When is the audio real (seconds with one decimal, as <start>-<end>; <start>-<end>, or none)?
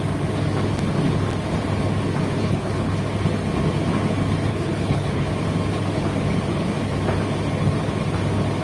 0.0-2.4; 2.9-4.5; 5.3-8.6